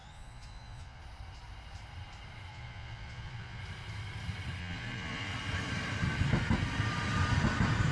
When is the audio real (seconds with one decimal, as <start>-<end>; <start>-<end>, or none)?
1.0-2.5; 3.6-4.6; 5.3-7.9